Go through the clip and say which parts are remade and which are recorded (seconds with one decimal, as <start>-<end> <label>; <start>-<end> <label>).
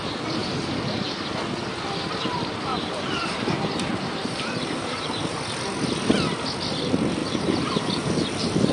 0.0-0.4 recorded; 0.4-1.3 remade; 1.3-2.7 recorded; 2.7-5.1 remade; 5.1-7.2 recorded; 7.2-8.1 remade; 8.1-8.7 recorded